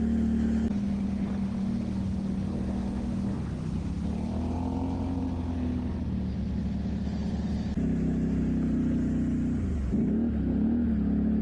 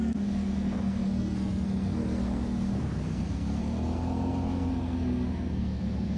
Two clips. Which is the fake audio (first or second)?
second